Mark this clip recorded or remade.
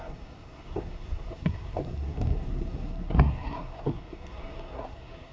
remade